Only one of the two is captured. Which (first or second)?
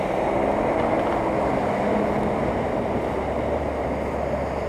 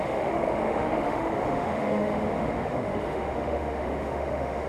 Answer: first